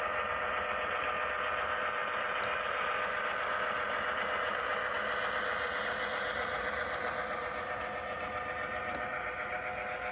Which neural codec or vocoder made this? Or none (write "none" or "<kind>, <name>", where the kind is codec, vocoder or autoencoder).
none